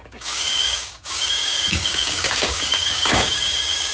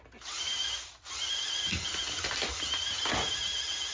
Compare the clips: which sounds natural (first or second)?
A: second